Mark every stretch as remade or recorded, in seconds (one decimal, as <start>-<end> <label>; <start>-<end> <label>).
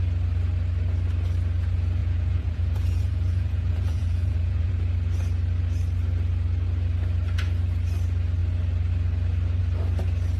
0.0-2.0 recorded; 2.0-4.7 remade; 4.7-10.4 recorded